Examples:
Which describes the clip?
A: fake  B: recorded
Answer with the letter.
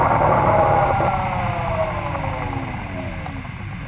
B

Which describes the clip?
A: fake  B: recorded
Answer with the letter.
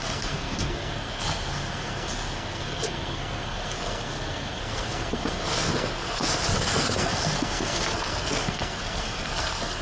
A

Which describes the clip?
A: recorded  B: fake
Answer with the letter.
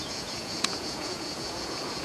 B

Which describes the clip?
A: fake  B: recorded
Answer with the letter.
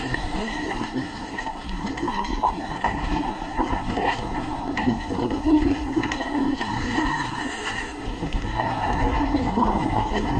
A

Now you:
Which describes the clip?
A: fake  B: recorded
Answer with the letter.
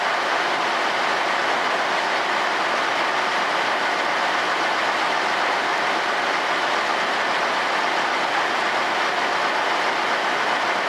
B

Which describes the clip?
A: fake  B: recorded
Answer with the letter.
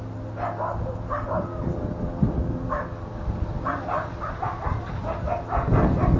B